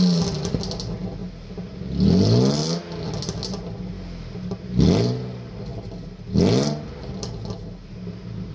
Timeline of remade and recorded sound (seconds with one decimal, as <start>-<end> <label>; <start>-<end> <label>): 0.0-8.5 recorded